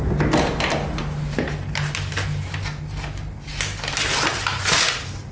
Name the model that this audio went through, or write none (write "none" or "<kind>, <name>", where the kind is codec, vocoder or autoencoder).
none